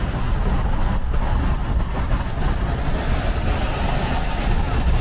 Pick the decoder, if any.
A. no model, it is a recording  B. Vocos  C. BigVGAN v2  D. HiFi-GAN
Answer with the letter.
A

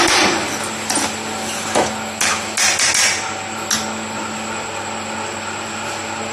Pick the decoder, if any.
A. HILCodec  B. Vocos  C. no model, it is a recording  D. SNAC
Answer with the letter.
C